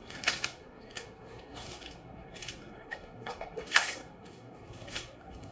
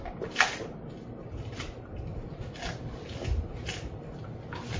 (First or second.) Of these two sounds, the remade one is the first